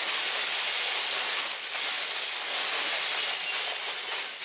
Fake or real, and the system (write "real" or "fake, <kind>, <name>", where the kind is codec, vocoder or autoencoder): real